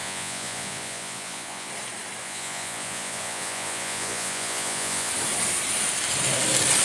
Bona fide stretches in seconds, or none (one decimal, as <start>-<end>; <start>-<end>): 1.7-2.2; 5.1-6.8